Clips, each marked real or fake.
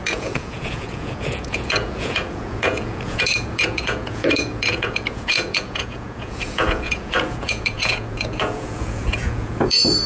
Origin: fake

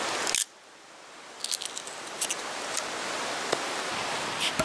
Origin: real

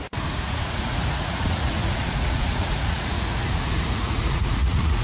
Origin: fake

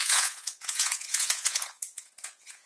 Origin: fake